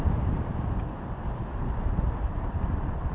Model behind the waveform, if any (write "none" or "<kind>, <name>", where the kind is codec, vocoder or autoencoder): vocoder, BigVGAN v2